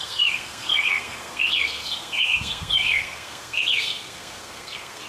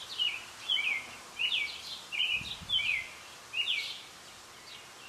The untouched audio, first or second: second